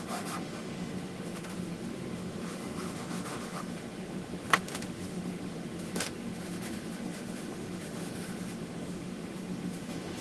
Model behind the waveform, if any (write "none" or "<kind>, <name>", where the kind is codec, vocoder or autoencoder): autoencoder, DAC-VAE